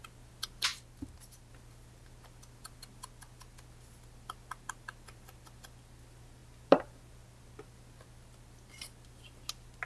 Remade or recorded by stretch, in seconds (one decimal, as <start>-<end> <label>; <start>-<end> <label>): 0.0-9.9 recorded